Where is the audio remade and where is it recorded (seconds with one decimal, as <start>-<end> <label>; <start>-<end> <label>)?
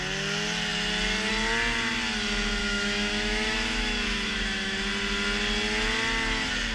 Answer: 0.0-2.6 recorded; 2.6-4.9 remade; 4.9-6.7 recorded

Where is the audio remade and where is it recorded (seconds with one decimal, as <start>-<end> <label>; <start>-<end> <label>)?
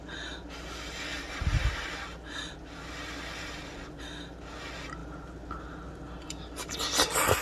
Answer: 0.0-7.4 recorded